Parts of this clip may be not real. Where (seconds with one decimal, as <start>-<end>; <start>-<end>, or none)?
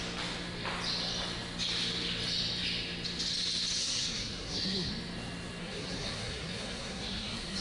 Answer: 3.8-4.9; 5.6-7.6